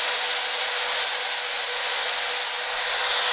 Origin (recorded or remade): recorded